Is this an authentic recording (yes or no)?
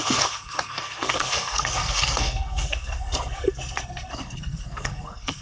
no